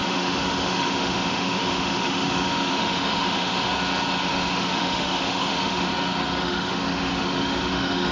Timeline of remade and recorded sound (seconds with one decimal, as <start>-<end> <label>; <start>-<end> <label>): 0.0-3.7 remade; 3.7-4.2 recorded; 4.2-5.9 remade; 5.9-6.4 recorded; 6.4-8.1 remade